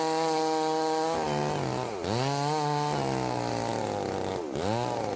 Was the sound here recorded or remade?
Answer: recorded